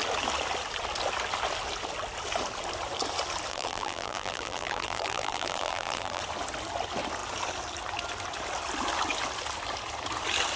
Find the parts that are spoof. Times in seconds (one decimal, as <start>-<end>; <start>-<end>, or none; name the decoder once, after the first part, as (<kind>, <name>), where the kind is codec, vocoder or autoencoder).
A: 3.5-6.2 (vocoder, BigVGAN v2)